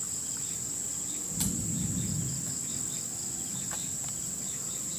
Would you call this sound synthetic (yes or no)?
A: no